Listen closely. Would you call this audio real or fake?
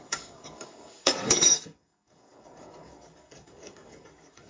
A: fake